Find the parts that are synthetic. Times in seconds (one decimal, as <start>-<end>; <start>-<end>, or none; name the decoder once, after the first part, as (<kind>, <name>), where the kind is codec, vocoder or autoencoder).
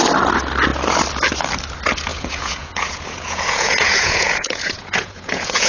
2.1-5.7 (vocoder, Vocos)